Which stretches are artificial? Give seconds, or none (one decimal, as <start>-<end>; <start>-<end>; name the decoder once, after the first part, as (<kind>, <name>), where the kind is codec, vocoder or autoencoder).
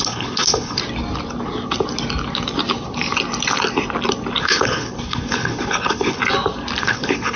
0.0-0.8 (codec, HILCodec); 4.4-6.2; 6.8-7.4